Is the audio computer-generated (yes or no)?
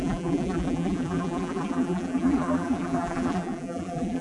yes